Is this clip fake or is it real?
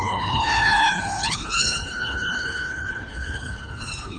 fake